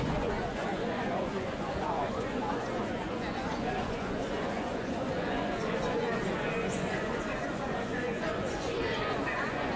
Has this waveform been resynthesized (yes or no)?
yes